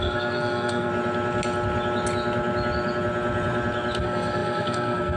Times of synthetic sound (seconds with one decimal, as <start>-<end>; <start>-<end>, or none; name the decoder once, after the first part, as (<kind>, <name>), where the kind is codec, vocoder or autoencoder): 0.0-0.9 (codec, SNAC); 4.0-5.2